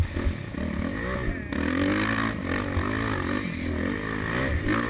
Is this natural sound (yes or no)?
yes